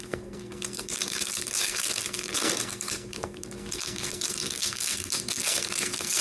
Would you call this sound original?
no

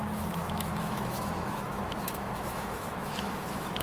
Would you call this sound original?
no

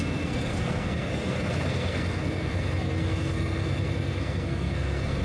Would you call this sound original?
no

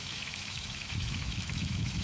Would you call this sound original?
no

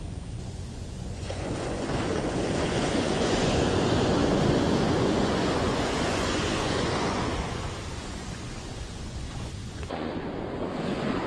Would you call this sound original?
no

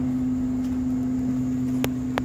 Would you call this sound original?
yes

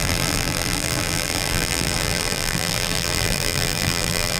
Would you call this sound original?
no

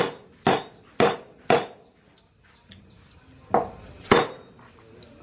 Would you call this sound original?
yes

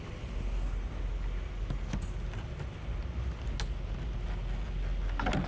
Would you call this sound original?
yes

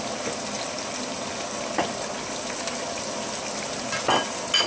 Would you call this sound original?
yes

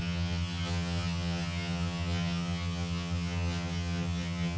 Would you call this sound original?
no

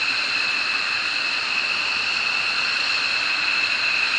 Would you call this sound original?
yes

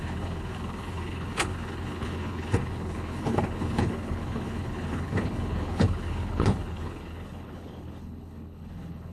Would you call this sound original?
no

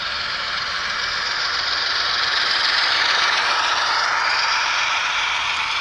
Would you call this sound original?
no